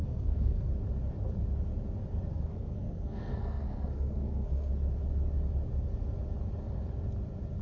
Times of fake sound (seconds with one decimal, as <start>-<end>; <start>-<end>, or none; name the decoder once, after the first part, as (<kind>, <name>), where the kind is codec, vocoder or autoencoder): 0.0-0.7 (codec, SNAC); 2.3-4.7